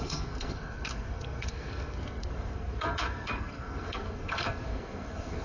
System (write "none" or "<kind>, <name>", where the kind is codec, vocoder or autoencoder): codec, SNAC